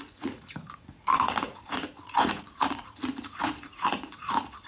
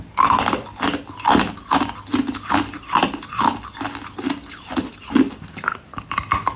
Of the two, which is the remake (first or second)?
first